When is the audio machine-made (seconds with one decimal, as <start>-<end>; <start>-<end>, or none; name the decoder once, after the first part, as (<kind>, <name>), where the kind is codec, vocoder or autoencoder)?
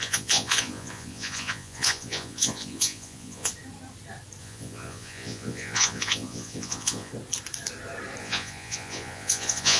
0.0-3.5 (vocoder, Vocos); 4.4-7.1; 8.2-9.8